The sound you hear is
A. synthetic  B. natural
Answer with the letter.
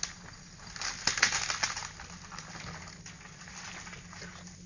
B